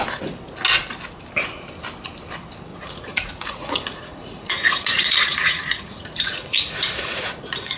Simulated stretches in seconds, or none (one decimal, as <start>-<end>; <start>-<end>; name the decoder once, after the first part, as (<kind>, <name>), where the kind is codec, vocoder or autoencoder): 2.7-7.8 (vocoder, Vocos)